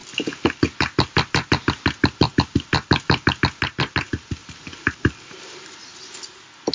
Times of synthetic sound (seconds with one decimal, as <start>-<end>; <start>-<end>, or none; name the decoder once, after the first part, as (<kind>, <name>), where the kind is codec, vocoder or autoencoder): 4.4-6.1 (vocoder, BigVGAN v2)